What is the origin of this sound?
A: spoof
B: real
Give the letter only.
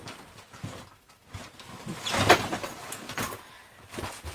B